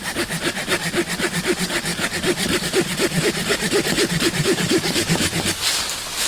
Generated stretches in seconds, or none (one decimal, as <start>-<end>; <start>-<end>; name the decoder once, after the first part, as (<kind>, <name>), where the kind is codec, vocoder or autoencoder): none